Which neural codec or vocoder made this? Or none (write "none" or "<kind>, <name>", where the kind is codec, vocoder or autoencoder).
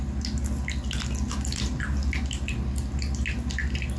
none